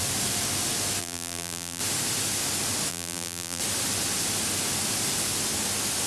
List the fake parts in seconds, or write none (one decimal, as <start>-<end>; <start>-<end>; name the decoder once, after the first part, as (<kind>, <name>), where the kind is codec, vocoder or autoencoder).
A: 1.0-1.8 (vocoder, BigVGAN v2); 2.9-3.6